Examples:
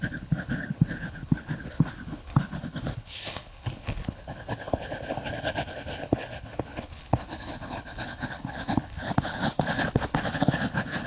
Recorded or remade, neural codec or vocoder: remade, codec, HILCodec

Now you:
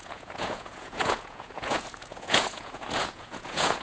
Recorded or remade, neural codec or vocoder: remade, vocoder, Vocos